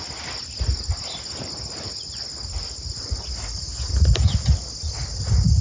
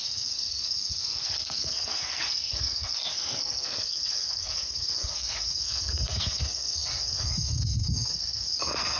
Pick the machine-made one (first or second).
second